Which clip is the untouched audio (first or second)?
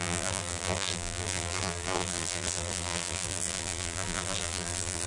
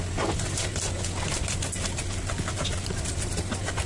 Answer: second